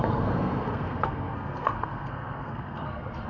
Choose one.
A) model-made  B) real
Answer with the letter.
A